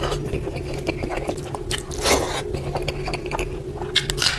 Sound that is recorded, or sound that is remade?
recorded